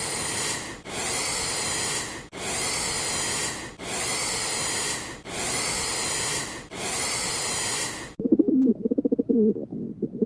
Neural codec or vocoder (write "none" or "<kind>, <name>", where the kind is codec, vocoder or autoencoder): none